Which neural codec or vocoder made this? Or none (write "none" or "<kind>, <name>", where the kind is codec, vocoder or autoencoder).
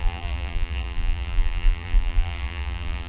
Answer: vocoder, BigVGAN v2